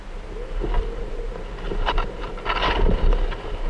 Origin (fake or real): real